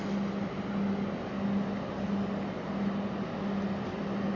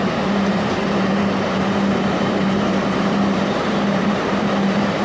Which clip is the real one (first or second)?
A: first